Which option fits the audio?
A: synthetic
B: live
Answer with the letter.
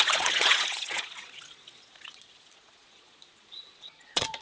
A